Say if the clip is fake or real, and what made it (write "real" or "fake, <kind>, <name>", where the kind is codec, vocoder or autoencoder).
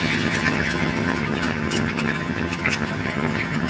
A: fake, vocoder, HiFi-GAN